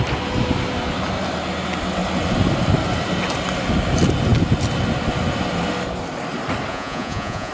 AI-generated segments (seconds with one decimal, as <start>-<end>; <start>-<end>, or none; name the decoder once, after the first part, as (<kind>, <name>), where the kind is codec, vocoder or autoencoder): 6.7-7.5 (vocoder, Vocos)